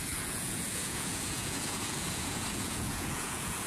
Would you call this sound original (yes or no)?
no